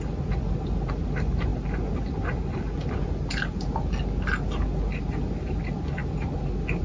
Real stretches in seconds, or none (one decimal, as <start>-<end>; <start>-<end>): 0.0-6.8